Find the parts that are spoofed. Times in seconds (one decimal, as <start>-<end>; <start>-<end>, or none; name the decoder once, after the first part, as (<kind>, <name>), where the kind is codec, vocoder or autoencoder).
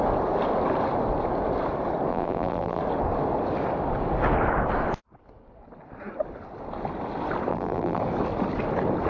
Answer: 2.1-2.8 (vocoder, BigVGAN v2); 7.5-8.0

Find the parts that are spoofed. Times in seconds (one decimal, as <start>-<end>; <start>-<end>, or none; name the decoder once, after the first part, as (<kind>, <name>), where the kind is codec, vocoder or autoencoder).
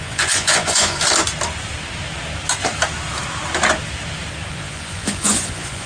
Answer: 0.0-1.0 (vocoder, Vocos); 4.5-5.9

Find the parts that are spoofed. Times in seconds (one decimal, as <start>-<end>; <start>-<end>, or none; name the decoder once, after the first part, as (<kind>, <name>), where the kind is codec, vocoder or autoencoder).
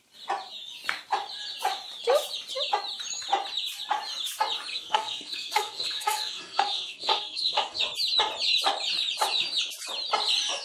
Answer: 4.7-7.8 (codec, SNAC)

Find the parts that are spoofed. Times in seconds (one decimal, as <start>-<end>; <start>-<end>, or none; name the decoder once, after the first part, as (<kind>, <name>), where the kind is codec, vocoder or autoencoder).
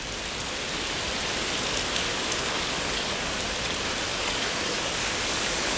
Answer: 2.1-3.4 (codec, DAC); 4.1-5.8